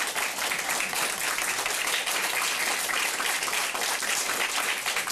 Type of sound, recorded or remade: recorded